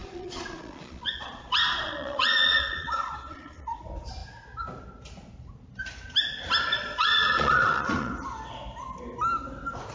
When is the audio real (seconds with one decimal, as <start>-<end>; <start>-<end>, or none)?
3.8-6.7; 8.1-9.9